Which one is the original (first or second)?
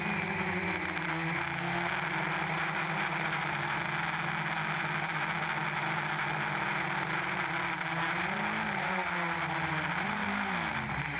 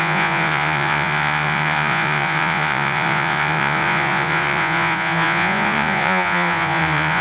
first